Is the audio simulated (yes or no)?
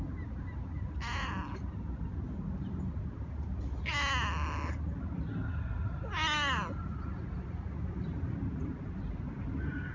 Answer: no